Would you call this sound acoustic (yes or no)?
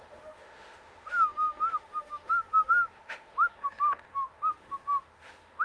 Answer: no